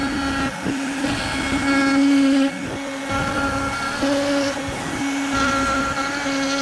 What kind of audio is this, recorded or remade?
recorded